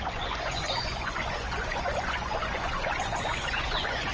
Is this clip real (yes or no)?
no